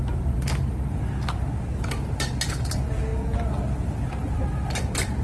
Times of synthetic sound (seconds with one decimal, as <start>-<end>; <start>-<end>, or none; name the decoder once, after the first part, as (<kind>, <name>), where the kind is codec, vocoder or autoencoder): none